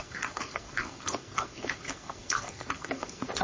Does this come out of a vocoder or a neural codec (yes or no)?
yes